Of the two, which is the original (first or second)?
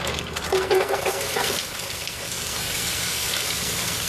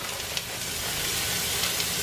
second